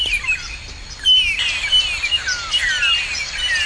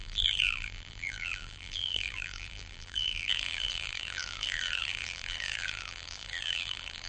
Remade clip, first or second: second